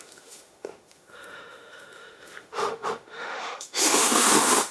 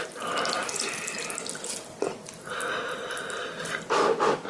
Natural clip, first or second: second